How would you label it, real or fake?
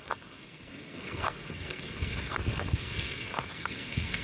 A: fake